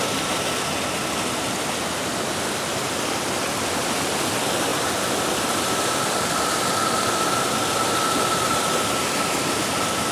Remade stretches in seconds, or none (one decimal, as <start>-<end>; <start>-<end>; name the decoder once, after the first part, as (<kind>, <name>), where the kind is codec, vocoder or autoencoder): none